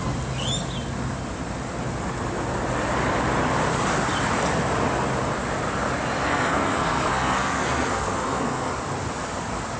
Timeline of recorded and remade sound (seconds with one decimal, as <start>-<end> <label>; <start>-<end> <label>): 0.0-6.2 recorded; 6.2-8.7 remade; 8.7-9.8 recorded